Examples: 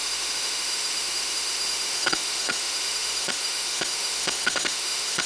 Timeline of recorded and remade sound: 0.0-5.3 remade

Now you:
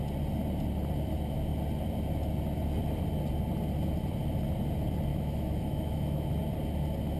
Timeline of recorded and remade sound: 0.0-5.1 recorded; 5.1-6.3 remade; 6.3-7.2 recorded